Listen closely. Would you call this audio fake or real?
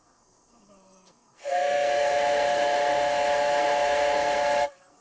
fake